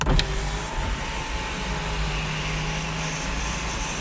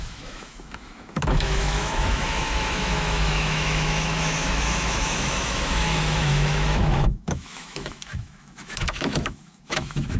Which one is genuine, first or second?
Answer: first